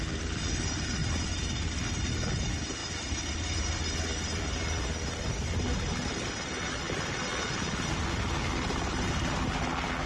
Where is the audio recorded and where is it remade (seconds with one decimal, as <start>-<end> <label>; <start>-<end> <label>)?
0.0-10.1 recorded